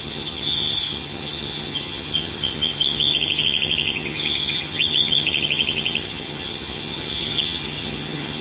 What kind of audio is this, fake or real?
fake